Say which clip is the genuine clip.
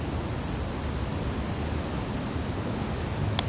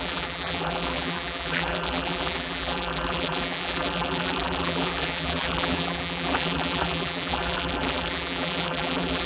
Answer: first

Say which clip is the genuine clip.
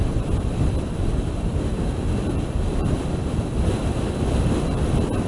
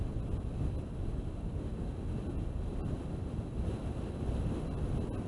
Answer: second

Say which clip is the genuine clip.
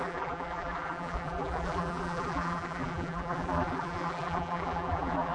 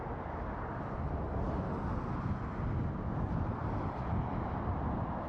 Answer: second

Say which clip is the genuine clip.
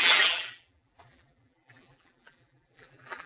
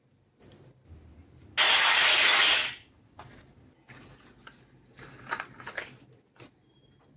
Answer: second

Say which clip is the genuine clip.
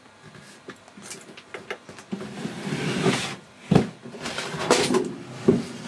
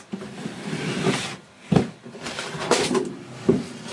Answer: first